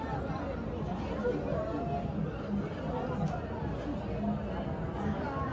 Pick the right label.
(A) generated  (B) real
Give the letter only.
B